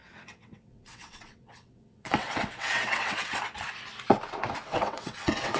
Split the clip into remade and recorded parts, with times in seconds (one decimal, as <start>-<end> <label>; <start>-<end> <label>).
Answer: 0.0-3.4 remade; 3.4-4.7 recorded; 4.7-5.6 remade